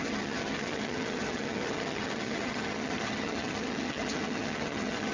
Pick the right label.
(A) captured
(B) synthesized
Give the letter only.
B